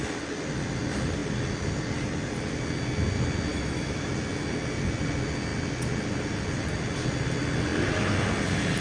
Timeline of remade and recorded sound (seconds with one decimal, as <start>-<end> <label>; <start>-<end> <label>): 0.0-3.5 recorded; 3.5-4.1 remade; 4.1-8.8 recorded